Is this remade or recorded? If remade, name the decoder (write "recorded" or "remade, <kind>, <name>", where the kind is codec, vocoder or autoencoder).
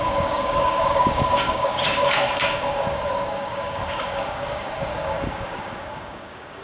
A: remade, codec, DAC